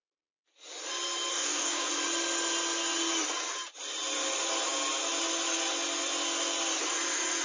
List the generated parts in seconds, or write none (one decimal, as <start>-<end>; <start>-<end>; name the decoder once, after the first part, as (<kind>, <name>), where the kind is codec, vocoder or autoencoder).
1.3-1.9 (codec, DAC)